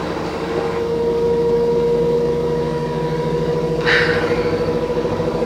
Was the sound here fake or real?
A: fake